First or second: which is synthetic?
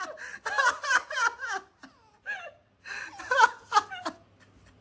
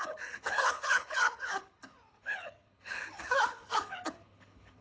second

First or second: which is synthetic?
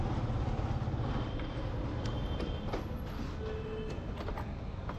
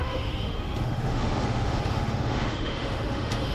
second